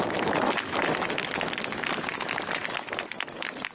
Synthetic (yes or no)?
no